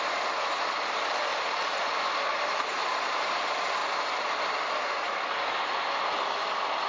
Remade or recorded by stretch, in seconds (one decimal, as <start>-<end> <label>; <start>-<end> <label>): 0.0-1.3 recorded; 1.3-1.9 remade; 1.9-2.3 recorded; 2.3-3.2 remade; 3.2-6.9 recorded